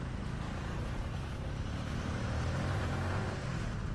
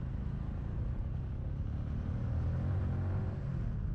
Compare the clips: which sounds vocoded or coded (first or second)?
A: first